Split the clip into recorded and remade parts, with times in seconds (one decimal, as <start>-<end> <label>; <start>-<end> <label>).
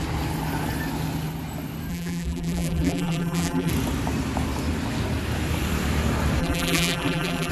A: 0.0-1.9 recorded; 1.9-3.7 remade; 3.7-6.4 recorded; 6.4-7.5 remade